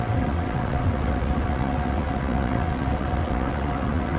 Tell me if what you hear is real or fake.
fake